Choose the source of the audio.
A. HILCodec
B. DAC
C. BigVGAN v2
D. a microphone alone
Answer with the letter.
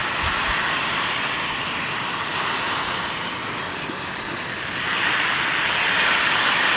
D